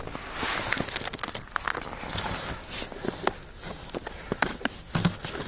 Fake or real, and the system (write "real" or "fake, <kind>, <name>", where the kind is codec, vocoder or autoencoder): real